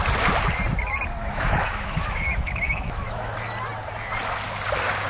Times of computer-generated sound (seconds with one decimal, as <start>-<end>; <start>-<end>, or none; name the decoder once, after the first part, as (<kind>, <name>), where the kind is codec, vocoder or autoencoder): 1.2-3.3 (autoencoder, DAC-VAE)